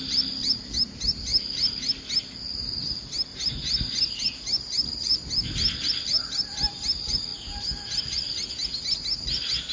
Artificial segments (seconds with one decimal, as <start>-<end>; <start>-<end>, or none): none